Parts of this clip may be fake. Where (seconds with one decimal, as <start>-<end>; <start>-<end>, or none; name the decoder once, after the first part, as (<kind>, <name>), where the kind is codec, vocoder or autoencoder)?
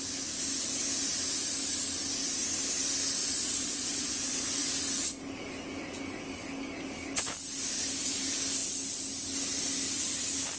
3.2-4.7 (vocoder, Vocos)